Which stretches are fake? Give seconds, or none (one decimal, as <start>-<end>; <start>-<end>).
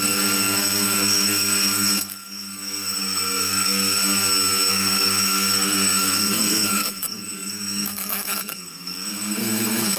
0.0-4.0; 4.7-10.0